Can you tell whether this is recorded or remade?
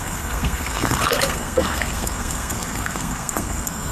remade